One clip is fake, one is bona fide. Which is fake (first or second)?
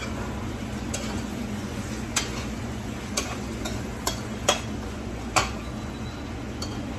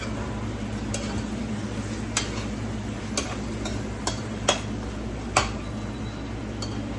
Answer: first